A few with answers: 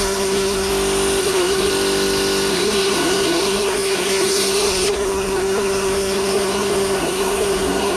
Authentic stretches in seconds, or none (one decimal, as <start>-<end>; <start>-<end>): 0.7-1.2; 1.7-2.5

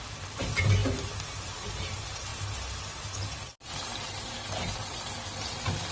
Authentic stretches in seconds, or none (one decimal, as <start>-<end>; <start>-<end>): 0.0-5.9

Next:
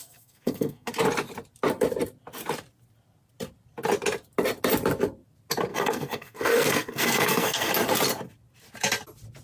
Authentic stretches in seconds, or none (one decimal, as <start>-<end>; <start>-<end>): 0.9-5.7; 7.7-9.4